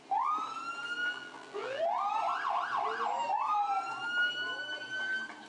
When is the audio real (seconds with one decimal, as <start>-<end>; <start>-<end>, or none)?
0.0-1.0; 1.8-5.5